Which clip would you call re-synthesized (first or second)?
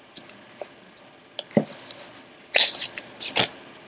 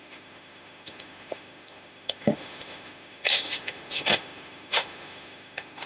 second